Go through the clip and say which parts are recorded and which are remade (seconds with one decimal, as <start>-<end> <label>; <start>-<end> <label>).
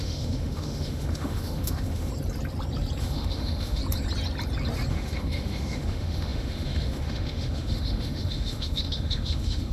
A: 0.0-2.1 remade; 2.1-3.0 recorded; 3.0-3.8 remade; 3.8-4.9 recorded; 4.9-9.7 remade